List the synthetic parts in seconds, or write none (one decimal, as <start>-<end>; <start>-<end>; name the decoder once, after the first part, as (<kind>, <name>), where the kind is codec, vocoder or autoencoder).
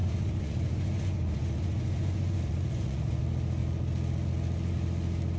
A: 0.0-3.2 (vocoder, Vocos)